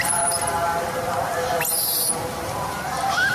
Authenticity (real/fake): real